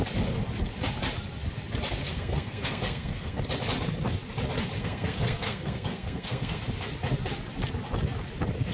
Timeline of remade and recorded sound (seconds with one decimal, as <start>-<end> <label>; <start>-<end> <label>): 0.0-2.0 recorded; 2.0-3.4 remade; 3.4-4.8 recorded; 4.8-6.6 remade; 6.6-8.7 recorded